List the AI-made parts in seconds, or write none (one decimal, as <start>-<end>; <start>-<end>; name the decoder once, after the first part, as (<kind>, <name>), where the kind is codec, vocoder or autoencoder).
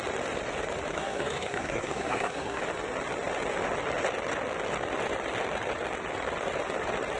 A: 0.9-2.6 (codec, SNAC)